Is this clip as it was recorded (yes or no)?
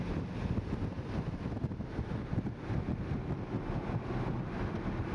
yes